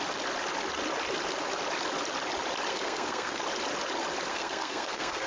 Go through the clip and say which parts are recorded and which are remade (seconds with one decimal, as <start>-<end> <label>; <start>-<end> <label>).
0.0-2.7 recorded; 2.7-3.4 remade; 3.4-4.3 recorded; 4.3-5.3 remade